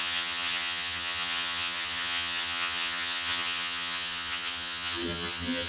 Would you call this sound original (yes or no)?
no